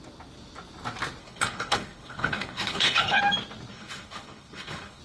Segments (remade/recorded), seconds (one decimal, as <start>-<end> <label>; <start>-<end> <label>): 0.0-1.2 recorded; 1.2-3.2 remade; 3.2-3.7 recorded; 3.7-5.0 remade